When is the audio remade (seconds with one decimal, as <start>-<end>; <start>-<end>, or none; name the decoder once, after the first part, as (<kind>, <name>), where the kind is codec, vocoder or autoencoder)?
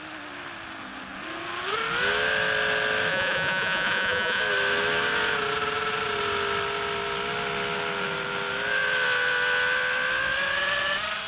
3.1-4.4 (vocoder, Vocos)